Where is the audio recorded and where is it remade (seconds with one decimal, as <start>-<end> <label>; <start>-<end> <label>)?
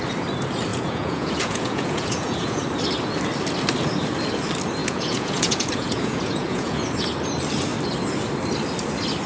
0.0-0.7 recorded; 0.7-2.6 remade; 2.6-4.8 recorded; 4.8-6.8 remade; 6.8-9.3 recorded